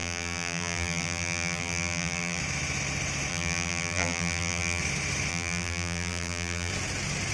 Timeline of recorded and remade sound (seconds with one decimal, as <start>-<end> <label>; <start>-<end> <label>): 0.0-2.4 remade; 2.4-3.3 recorded; 3.3-4.8 remade; 4.8-5.3 recorded; 5.3-6.7 remade; 6.7-7.3 recorded